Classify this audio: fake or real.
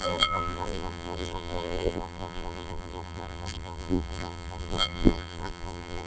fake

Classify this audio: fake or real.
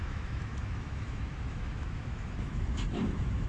fake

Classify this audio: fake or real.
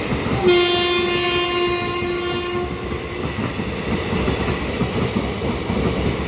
real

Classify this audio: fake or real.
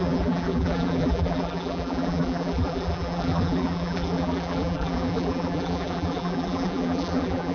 fake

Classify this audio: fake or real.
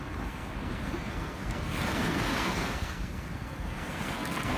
fake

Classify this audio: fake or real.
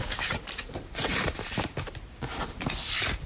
fake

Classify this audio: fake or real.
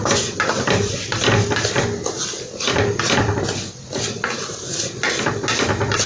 real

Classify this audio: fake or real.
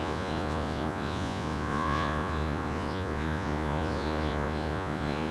fake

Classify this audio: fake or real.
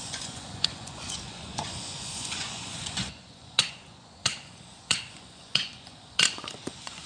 fake